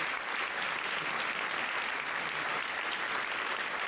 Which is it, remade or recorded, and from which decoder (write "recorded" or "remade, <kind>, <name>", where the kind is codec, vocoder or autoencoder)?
recorded